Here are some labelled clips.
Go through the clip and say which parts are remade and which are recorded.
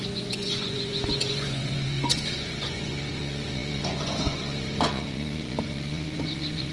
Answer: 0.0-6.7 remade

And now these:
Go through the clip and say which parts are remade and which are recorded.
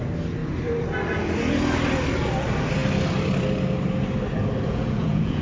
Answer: 0.0-4.7 recorded; 4.7-5.4 remade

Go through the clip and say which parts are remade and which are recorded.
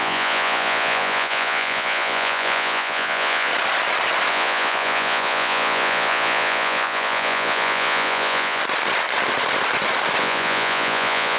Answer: 0.0-3.5 remade; 3.5-4.3 recorded; 4.3-8.6 remade; 8.6-10.2 recorded; 10.2-11.4 remade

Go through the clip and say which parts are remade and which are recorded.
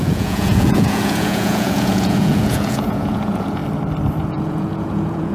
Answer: 0.0-3.6 remade; 3.6-4.2 recorded; 4.2-5.3 remade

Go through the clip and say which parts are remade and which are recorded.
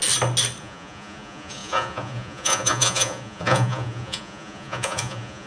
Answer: 0.0-0.6 recorded; 0.6-5.5 remade